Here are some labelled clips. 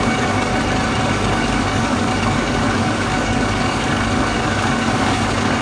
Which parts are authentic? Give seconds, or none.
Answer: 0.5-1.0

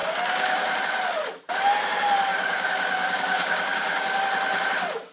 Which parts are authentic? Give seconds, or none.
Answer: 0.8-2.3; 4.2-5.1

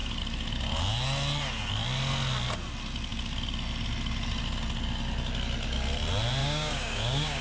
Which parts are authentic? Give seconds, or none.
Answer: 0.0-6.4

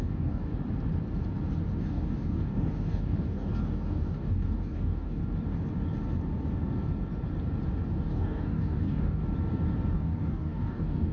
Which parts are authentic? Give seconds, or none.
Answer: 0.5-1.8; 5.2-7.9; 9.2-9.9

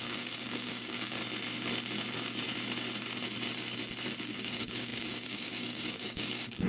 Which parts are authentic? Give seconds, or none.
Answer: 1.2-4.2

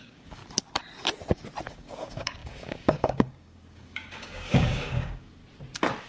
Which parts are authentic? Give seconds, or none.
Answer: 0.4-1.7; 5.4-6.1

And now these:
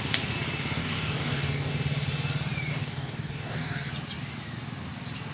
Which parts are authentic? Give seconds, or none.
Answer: 0.0-0.8; 1.7-2.7; 3.9-5.3